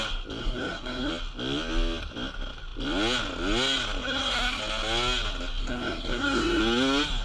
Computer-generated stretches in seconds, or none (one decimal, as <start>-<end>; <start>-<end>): 0.4-1.1; 4.0-4.6; 5.6-6.6